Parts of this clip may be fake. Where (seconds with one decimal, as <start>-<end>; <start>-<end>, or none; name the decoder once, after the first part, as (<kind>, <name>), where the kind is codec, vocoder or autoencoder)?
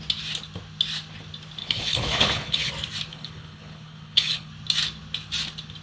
1.6-2.7 (codec, HILCodec); 3.1-4.5